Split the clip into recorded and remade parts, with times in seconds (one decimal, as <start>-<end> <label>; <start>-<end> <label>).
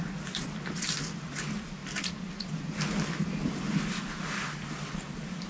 0.0-5.5 recorded